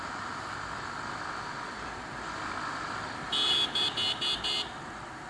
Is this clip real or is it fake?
real